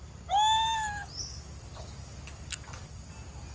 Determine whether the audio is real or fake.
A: real